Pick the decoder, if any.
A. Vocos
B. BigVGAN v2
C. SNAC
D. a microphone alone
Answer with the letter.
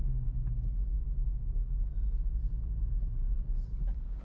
D